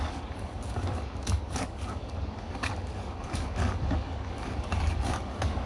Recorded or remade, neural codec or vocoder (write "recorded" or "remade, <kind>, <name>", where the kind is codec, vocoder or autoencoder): remade, codec, DAC